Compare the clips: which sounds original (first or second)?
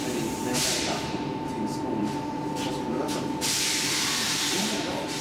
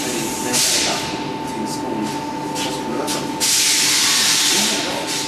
second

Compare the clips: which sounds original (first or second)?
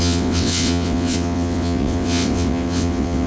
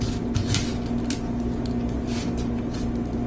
second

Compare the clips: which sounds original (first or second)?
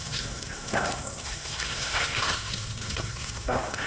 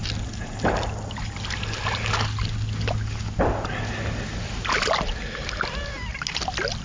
second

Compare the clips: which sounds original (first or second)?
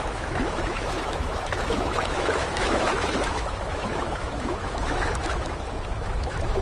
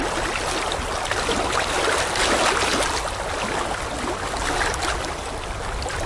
second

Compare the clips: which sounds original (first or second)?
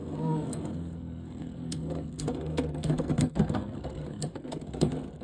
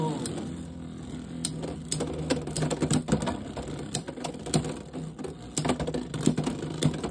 second